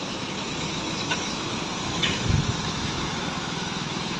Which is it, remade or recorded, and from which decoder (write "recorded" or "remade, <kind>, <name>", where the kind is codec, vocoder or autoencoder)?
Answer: remade, autoencoder, DAC-VAE